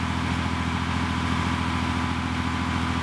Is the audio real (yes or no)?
yes